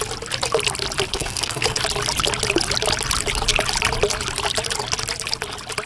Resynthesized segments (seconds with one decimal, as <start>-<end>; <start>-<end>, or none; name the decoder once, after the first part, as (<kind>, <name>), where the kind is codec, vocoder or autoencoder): 1.1-1.8 (codec, SNAC)